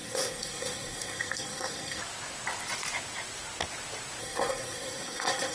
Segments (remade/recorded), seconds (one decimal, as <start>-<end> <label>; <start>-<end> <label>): 0.0-2.0 remade; 2.0-4.2 recorded; 4.2-5.5 remade